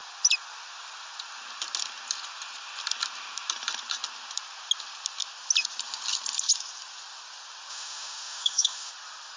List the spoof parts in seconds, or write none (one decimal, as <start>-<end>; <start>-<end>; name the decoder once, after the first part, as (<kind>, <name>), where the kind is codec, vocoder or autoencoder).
7.7-8.9 (autoencoder, DAC-VAE)